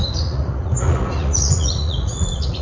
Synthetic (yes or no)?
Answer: yes